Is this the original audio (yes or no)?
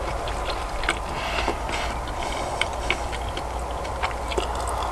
yes